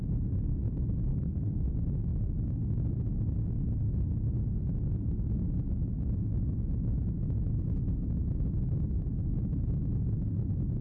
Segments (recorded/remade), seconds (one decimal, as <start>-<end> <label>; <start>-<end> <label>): 0.0-1.1 recorded; 1.1-1.6 remade; 1.6-10.8 recorded